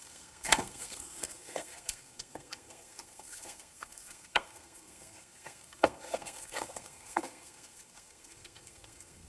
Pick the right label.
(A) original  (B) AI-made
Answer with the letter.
B